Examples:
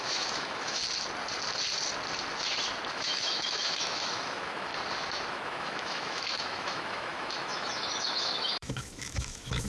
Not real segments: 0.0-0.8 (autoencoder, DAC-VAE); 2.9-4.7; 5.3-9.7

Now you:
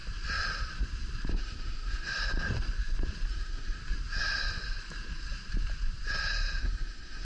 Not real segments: 1.3-2.1 (autoencoder, DAC-VAE); 3.3-3.8; 6.6-7.2

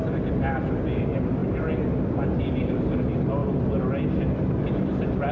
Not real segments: none